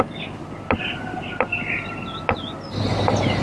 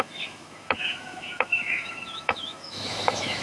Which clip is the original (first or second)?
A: first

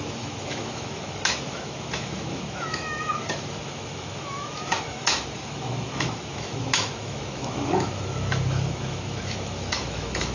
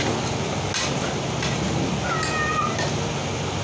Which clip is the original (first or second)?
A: second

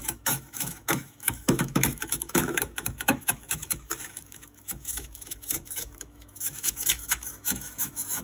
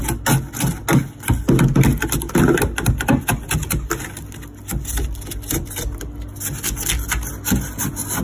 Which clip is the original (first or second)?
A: second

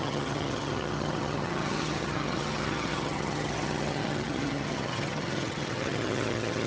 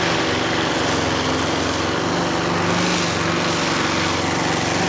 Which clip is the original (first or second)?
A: second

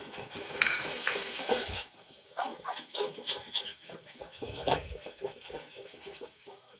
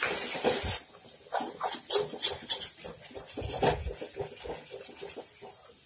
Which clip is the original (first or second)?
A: second